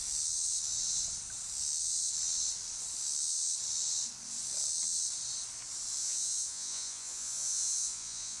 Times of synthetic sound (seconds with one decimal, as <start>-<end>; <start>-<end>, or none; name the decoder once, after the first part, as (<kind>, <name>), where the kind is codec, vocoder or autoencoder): 6.0-8.4 (vocoder, Vocos)